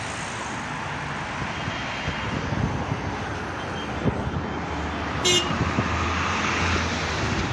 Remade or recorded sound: recorded